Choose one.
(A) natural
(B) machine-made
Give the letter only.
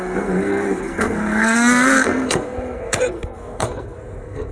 B